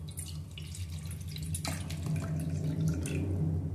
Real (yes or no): yes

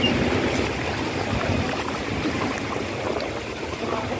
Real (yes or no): yes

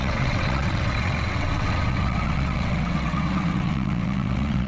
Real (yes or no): no